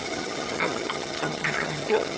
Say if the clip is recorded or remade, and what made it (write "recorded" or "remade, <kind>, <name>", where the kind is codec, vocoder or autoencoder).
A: remade, vocoder, HiFi-GAN